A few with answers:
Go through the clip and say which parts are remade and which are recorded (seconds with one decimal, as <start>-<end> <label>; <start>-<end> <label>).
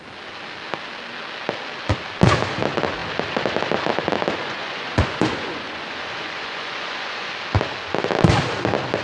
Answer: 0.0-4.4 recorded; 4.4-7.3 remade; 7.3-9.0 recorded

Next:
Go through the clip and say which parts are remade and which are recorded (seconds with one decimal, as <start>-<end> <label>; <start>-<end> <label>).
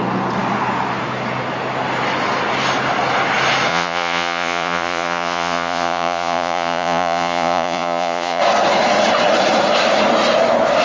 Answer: 0.0-3.7 recorded; 3.7-8.4 remade; 8.4-10.8 recorded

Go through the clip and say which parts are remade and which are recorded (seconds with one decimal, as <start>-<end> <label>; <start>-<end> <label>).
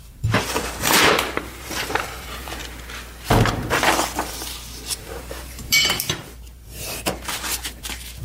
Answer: 0.0-2.6 remade; 2.6-5.0 recorded; 5.0-8.2 remade